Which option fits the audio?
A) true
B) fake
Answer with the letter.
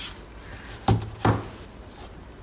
A